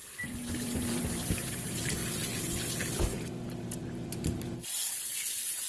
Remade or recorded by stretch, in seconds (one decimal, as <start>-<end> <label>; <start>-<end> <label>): 0.0-1.0 recorded; 1.0-2.0 remade; 2.0-3.6 recorded; 3.6-4.8 remade; 4.8-5.7 recorded